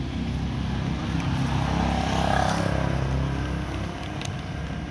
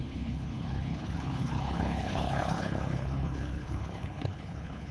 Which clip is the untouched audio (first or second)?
first